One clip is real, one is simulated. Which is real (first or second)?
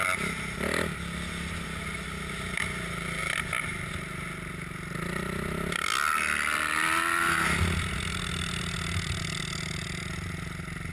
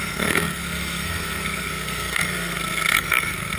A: first